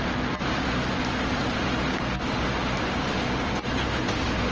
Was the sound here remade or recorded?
recorded